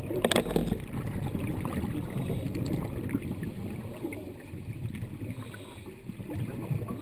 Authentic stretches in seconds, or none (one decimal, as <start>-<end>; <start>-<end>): 0.0-7.0